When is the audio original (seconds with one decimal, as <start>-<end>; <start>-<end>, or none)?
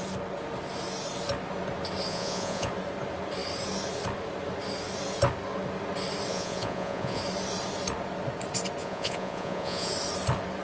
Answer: 0.0-2.1; 2.7-6.3; 7.2-8.8; 9.9-10.6